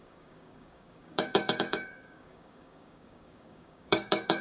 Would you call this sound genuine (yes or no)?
no